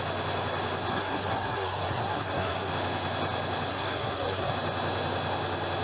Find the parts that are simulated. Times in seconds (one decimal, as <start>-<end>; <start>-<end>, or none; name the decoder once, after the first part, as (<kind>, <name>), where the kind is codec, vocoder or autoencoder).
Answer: 0.9-2.7 (codec, SNAC); 3.7-4.5